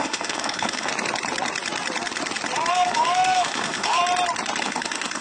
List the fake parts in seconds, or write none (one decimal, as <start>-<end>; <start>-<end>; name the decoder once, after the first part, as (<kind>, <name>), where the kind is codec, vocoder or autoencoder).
0.0-0.9 (autoencoder, DAC-VAE); 2.7-4.0; 4.6-5.2